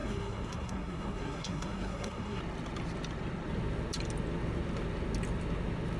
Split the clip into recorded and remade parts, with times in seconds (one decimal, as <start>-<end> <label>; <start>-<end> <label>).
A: 0.0-2.4 remade; 2.4-6.0 recorded